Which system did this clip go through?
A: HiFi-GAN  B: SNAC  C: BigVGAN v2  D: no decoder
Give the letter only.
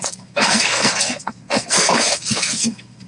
B